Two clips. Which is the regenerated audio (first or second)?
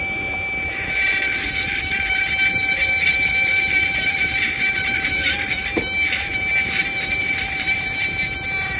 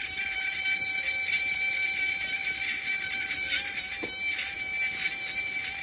first